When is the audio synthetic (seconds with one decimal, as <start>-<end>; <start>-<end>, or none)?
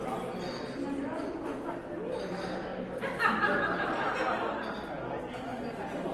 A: none